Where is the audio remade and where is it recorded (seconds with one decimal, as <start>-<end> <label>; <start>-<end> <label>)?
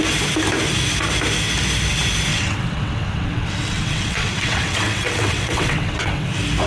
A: 0.0-2.3 recorded; 2.3-6.3 remade; 6.3-6.7 recorded